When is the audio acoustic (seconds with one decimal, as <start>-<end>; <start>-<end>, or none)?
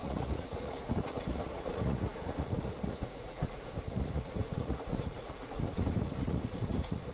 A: none